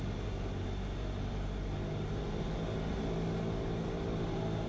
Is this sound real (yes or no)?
yes